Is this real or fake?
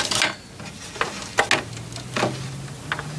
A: real